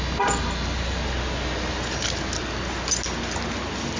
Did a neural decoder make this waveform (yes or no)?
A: no